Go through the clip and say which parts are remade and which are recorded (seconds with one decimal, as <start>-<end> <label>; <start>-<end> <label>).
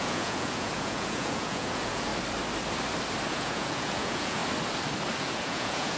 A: 0.0-2.1 remade; 2.1-3.3 recorded; 3.3-4.4 remade; 4.4-5.2 recorded; 5.2-6.0 remade